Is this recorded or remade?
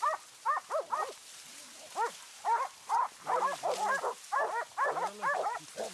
recorded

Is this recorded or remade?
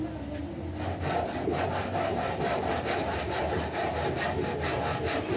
recorded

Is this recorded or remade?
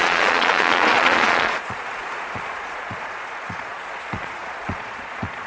remade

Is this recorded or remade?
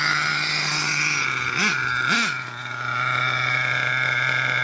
recorded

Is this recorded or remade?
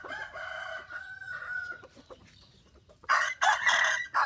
remade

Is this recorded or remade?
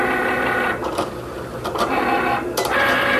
recorded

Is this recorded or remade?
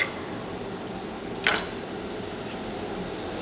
recorded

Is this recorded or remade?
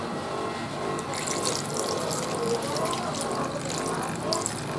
recorded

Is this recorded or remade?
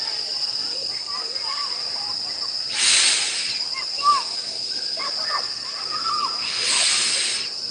recorded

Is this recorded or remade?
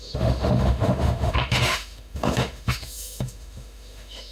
remade